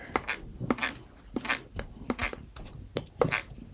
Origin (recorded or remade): recorded